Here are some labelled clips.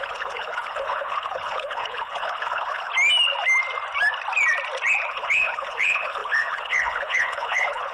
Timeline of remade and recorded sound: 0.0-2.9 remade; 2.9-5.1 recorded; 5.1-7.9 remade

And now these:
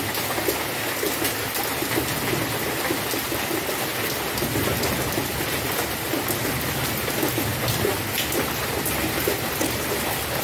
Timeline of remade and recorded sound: 0.0-10.4 recorded

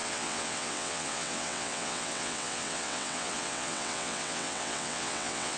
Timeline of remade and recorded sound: 0.0-5.6 remade

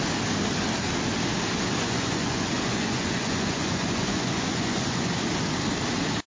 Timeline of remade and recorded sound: 0.0-1.8 recorded; 1.8-5.1 remade; 5.1-6.3 recorded

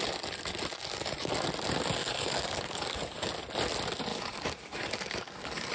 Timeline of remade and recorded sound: 0.0-0.7 recorded; 0.7-1.3 remade; 1.3-2.0 recorded; 2.0-3.3 remade; 3.3-4.1 recorded; 4.1-5.7 remade

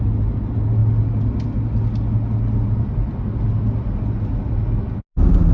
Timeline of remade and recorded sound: 0.0-5.5 recorded

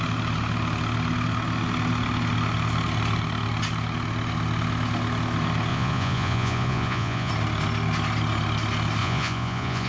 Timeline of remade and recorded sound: 0.0-5.7 recorded; 5.7-7.3 remade; 7.3-9.0 recorded; 9.0-9.9 remade

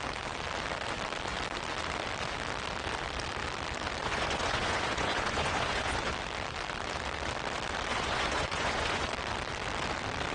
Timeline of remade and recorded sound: 0.0-4.0 recorded; 4.0-6.1 remade; 6.1-7.9 recorded; 7.9-9.1 remade; 9.1-10.3 recorded